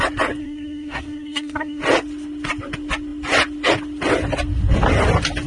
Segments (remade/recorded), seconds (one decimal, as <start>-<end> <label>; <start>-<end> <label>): 0.0-0.4 recorded; 0.4-1.8 remade; 1.8-5.5 recorded